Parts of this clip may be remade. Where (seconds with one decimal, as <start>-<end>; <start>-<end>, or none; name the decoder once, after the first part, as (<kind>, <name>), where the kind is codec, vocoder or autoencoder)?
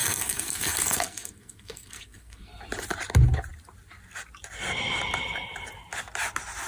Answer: 0.0-2.6 (codec, SNAC)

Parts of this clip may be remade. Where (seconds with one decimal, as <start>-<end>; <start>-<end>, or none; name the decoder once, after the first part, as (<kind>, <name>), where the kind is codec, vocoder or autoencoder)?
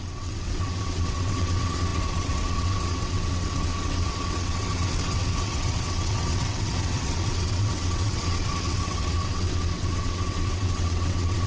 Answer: 0.0-11.5 (vocoder, WaveNeXt)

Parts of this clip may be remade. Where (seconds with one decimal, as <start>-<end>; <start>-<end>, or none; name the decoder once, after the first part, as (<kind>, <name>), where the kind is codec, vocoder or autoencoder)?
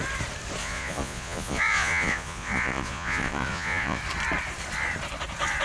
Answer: 0.6-4.0 (vocoder, Vocos)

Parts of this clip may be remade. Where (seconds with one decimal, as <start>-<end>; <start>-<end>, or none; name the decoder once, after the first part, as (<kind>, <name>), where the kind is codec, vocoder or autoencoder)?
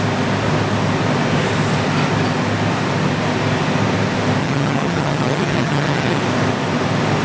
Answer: 4.4-6.2 (vocoder, HiFi-GAN)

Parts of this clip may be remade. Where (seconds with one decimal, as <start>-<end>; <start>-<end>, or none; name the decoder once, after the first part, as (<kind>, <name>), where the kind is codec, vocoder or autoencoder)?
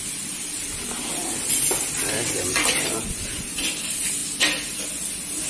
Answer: 0.0-4.2 (vocoder, BigVGAN v2); 4.9-5.5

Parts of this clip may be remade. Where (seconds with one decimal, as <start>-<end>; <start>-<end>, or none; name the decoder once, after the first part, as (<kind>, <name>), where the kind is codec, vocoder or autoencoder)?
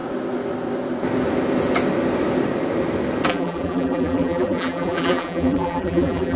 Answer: 3.3-6.4 (vocoder, BigVGAN v2)